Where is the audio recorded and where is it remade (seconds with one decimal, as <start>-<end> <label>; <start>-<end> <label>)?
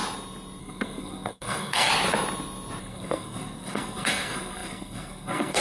0.0-0.6 recorded; 0.6-1.9 remade; 1.9-2.8 recorded; 2.8-5.6 remade